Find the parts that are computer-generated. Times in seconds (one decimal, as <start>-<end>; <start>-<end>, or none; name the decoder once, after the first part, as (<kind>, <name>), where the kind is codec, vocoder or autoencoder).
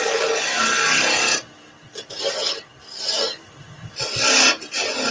none